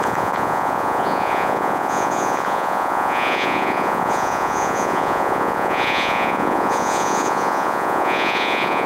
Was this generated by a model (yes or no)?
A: yes